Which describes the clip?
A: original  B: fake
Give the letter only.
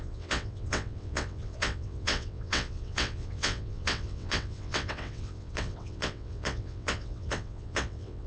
B